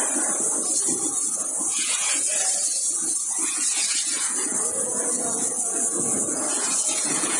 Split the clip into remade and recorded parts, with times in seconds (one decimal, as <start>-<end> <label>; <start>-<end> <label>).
0.0-1.1 recorded; 1.1-2.3 remade; 2.3-2.7 recorded; 2.7-7.4 remade

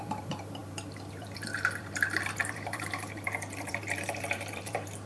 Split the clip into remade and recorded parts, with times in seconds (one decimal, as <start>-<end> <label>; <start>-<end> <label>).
0.0-5.1 remade

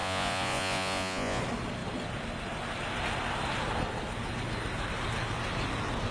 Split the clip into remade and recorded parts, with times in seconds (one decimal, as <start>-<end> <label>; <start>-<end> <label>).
0.0-1.4 remade; 1.4-6.1 recorded

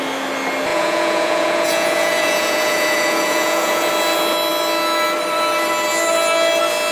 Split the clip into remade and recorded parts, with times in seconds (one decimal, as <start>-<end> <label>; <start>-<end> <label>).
0.0-0.7 recorded; 0.7-3.9 remade; 3.9-6.9 recorded

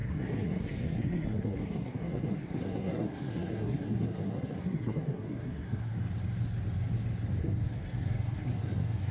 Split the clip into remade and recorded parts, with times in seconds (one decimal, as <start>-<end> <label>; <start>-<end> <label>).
0.0-5.9 remade; 5.9-7.4 recorded; 7.4-9.1 remade

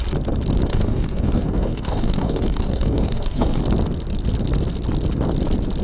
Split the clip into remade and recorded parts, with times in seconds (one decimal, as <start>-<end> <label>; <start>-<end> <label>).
0.0-0.7 recorded; 0.7-3.6 remade; 3.6-5.8 recorded

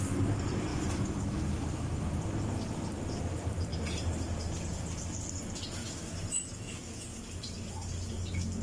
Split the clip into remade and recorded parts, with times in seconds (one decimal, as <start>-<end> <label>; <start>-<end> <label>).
0.0-0.7 recorded; 0.7-2.1 remade; 2.1-5.8 recorded; 5.8-7.4 remade; 7.4-8.6 recorded